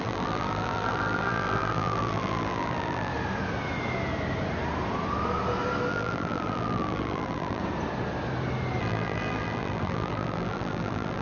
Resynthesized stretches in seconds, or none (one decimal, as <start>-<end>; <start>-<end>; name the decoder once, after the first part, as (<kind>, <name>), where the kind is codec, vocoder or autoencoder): 0.0-3.1 (vocoder, BigVGAN v2); 5.9-7.6; 8.8-11.2